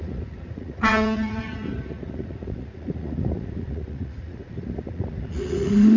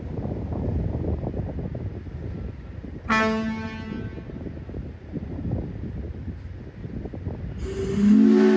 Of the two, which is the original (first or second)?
second